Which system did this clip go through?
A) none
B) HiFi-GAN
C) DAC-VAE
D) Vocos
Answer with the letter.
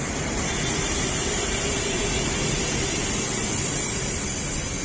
A